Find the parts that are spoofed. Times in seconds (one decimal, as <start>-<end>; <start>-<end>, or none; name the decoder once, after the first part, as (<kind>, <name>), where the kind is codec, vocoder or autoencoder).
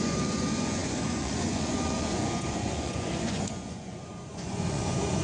0.0-5.2 (vocoder, Vocos)